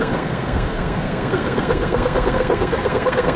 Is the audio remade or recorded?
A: remade